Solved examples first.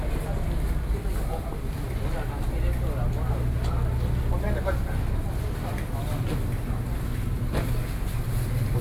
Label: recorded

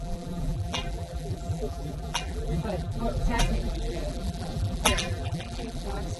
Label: remade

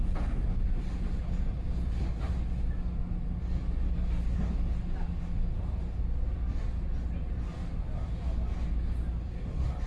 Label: recorded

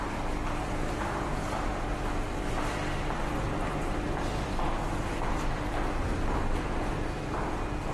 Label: recorded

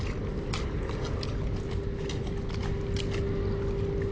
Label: recorded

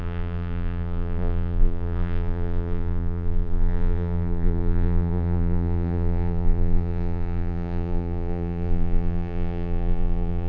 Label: remade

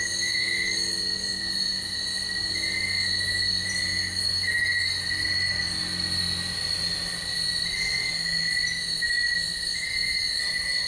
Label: recorded